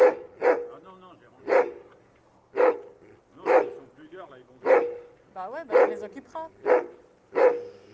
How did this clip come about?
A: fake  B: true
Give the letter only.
B